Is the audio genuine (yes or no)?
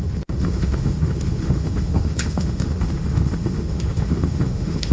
no